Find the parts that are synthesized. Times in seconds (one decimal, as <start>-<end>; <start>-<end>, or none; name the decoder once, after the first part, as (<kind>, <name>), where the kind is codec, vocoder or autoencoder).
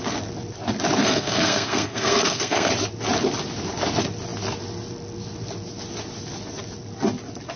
1.0-2.7 (codec, SNAC)